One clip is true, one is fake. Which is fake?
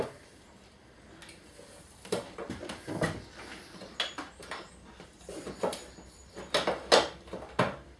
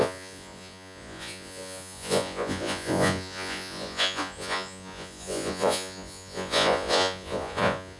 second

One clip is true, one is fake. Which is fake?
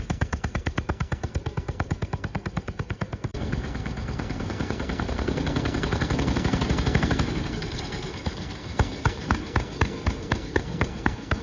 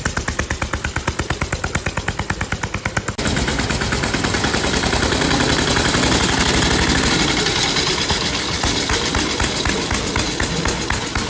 first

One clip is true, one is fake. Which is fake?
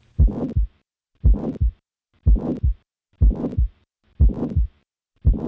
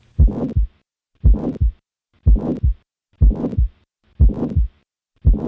first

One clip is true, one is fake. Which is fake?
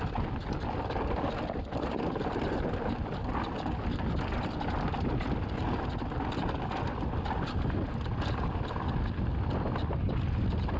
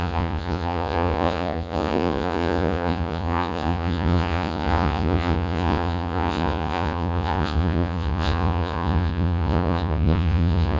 second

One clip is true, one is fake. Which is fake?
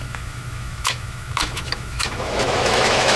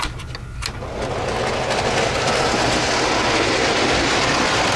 first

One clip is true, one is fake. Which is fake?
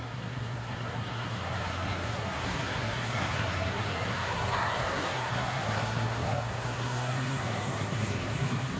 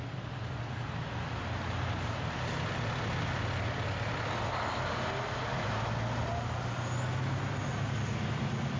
first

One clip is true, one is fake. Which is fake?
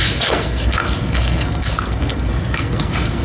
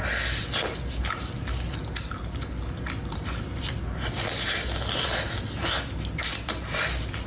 first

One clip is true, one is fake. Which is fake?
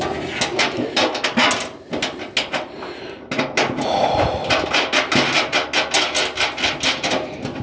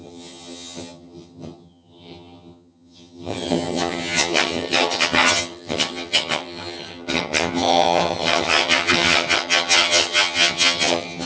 second